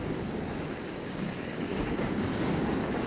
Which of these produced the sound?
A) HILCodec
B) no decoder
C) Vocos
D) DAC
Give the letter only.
D